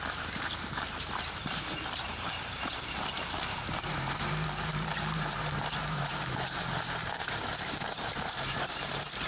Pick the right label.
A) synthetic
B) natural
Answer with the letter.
A